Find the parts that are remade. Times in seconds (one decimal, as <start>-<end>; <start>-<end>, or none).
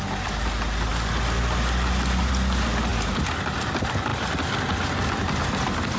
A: none